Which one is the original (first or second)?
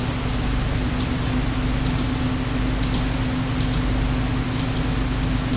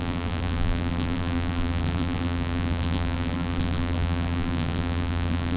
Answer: first